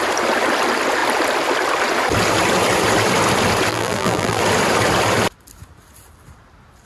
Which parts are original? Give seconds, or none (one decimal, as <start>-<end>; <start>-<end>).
0.0-3.7; 4.4-6.9